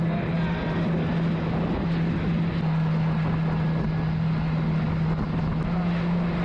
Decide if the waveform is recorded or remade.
recorded